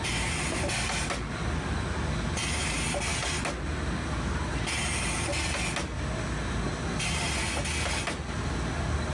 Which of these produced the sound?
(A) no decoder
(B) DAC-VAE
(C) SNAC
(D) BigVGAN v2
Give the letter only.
A